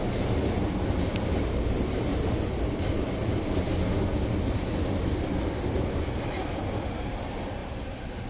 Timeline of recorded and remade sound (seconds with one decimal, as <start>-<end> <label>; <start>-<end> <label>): 0.0-2.1 recorded; 2.1-3.6 remade; 3.6-8.3 recorded

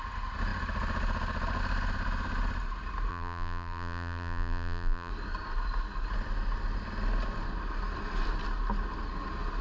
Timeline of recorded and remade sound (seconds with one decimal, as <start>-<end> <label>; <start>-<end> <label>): 0.0-3.1 recorded; 3.1-5.1 remade; 5.1-9.6 recorded

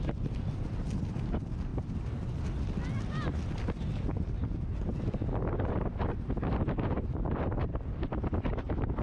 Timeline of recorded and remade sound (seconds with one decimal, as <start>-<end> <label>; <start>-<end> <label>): 0.0-1.7 remade; 1.7-5.7 recorded; 5.7-7.7 remade; 7.7-8.6 recorded; 8.6-9.0 remade

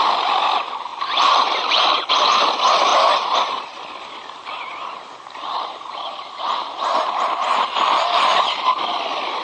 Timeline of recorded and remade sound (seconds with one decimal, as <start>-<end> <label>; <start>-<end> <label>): 0.0-0.9 recorded; 0.9-2.1 remade; 2.1-2.9 recorded; 2.9-5.7 remade; 5.7-9.4 recorded

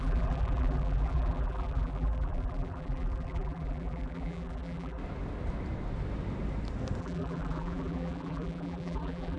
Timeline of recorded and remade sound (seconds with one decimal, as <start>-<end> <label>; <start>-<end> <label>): 0.0-5.0 remade; 5.0-7.0 recorded; 7.0-9.4 remade

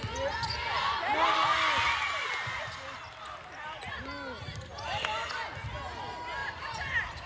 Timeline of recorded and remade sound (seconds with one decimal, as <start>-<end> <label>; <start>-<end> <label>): 0.0-6.4 recorded; 6.4-7.3 remade